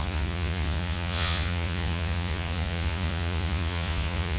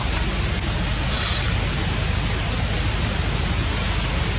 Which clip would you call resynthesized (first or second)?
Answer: first